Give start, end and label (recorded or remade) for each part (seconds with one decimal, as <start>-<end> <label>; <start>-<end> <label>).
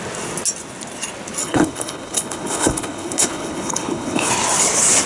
0.0-1.4 recorded; 1.4-4.3 remade; 4.3-5.1 recorded